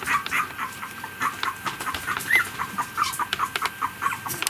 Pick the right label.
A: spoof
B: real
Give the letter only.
B